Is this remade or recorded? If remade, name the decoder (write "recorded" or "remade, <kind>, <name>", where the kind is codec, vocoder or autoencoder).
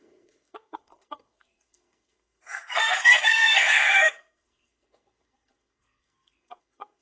remade, codec, SNAC